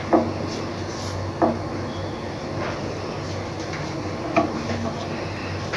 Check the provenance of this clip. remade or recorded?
recorded